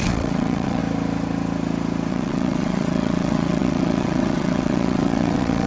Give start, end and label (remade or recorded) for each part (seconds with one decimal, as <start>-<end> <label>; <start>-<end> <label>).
0.0-0.8 remade; 0.8-2.1 recorded; 2.1-5.7 remade